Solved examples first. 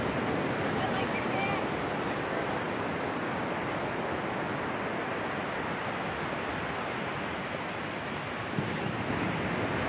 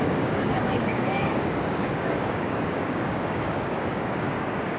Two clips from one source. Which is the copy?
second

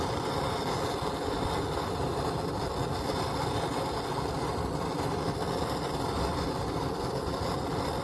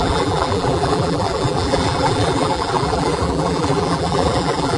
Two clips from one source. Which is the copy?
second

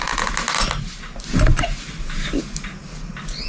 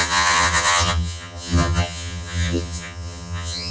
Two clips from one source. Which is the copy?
second